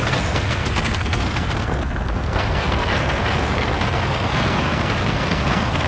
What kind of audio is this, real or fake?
fake